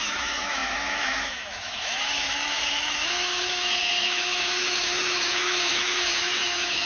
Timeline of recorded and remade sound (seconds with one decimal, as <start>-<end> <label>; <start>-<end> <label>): 0.0-6.9 remade